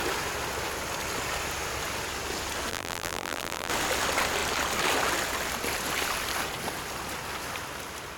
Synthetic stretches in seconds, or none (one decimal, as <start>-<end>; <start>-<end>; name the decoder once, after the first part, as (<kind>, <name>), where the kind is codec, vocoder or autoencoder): 2.7-3.7 (vocoder, BigVGAN v2)